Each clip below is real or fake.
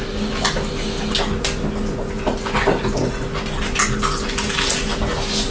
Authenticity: real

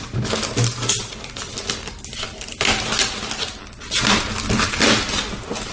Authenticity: real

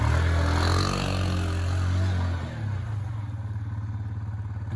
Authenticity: real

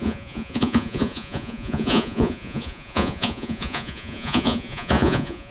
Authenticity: fake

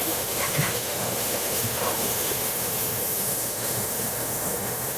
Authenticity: fake